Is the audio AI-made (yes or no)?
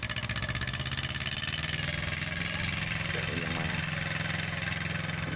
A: no